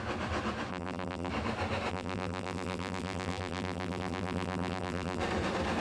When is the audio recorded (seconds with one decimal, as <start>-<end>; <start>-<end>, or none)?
0.0-0.7; 1.3-1.9; 5.2-5.8